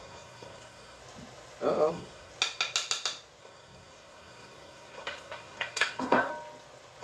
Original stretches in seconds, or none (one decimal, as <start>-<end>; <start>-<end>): 1.0-1.9; 2.3-3.4; 6.3-7.0